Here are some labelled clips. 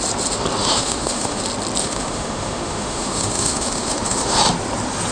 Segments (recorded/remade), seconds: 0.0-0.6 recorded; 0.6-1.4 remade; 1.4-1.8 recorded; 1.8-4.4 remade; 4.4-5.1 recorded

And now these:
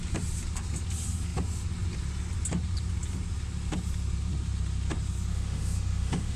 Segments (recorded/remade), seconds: 0.0-5.3 recorded; 5.3-6.4 remade